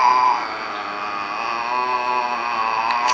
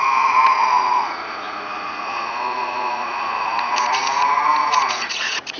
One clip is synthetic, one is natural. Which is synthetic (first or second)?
second